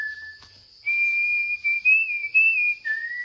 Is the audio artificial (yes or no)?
no